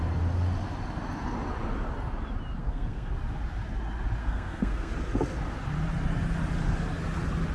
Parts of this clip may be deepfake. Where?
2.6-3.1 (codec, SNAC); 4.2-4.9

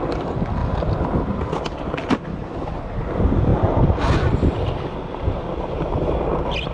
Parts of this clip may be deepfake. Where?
0.6-1.6 (vocoder, BigVGAN v2)